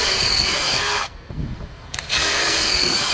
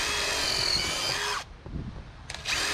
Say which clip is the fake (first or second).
first